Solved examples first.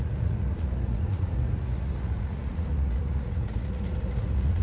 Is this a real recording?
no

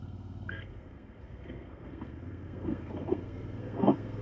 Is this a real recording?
no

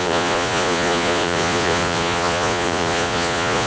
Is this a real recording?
no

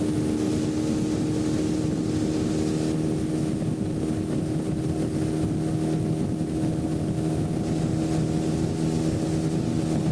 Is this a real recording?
yes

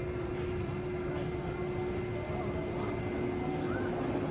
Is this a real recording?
yes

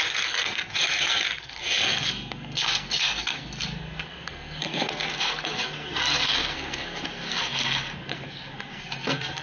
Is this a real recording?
no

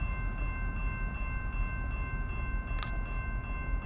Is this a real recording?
yes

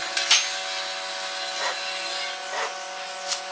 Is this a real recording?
yes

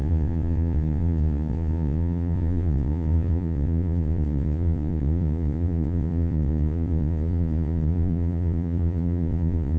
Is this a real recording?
no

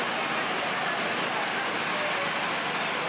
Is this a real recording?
yes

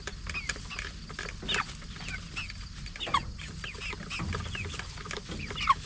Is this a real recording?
yes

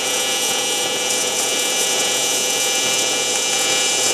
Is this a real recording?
no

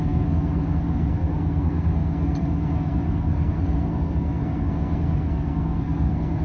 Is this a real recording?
no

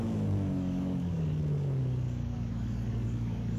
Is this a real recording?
no